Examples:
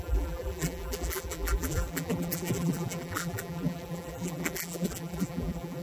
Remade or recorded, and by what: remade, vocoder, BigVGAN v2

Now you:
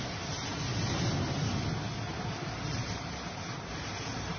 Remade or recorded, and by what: recorded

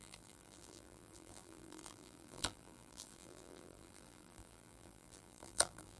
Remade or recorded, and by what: remade, vocoder, BigVGAN v2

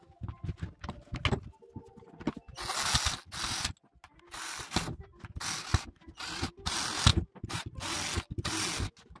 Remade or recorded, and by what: recorded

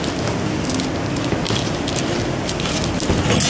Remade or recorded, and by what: recorded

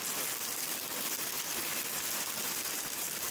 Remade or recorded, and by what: remade, vocoder, BigVGAN v2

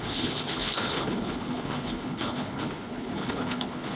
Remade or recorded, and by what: remade, codec, HILCodec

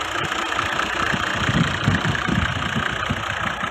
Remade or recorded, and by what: recorded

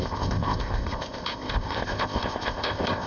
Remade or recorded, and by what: remade, codec, ZipCodec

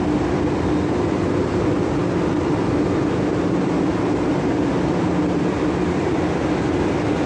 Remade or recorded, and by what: recorded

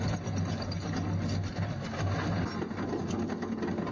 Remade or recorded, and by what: recorded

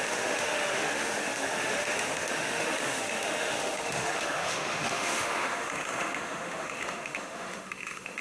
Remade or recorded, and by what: remade, autoencoder, DAC-VAE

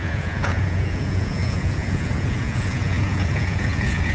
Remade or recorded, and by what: remade, vocoder, Vocos